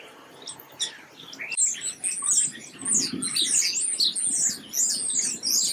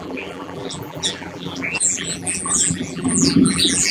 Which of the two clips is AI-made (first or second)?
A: second